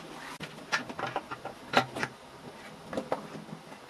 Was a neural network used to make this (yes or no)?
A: no